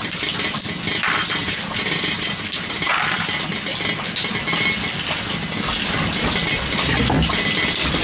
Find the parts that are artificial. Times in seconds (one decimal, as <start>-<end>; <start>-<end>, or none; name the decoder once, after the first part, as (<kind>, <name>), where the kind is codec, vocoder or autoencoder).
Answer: 1.4-2.9 (vocoder, BigVGAN v2)